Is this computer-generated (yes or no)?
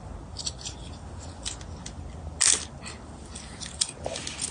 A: no